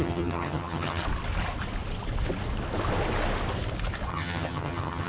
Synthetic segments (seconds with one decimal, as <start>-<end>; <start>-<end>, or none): 0.0-1.0; 4.1-5.1